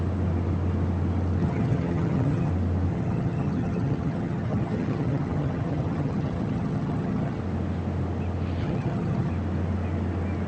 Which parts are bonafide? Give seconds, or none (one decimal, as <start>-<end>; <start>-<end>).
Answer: 0.0-1.4; 2.5-2.9; 7.4-8.6; 9.3-10.5